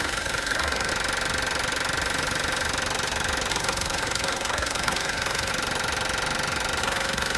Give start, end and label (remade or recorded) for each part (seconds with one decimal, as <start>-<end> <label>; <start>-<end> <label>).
0.0-0.9 remade; 0.9-3.5 recorded; 3.5-5.5 remade; 5.5-6.8 recorded; 6.8-7.4 remade